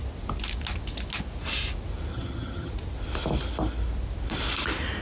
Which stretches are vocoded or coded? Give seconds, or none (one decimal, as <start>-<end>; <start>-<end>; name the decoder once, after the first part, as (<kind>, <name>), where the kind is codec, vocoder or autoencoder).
2.1-2.7 (vocoder, HiFi-GAN)